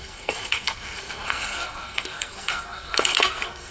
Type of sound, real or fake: fake